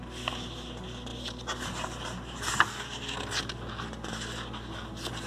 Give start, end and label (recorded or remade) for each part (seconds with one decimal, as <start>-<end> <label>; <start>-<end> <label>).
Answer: 0.0-5.3 recorded